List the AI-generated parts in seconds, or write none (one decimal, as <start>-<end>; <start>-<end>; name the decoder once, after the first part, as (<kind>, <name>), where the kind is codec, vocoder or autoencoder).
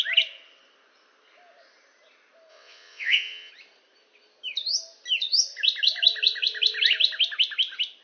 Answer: 2.5-3.5 (vocoder, WaveNeXt)